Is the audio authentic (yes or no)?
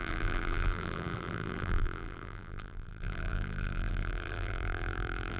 no